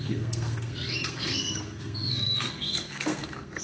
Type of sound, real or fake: fake